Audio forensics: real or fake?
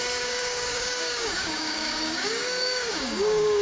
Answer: fake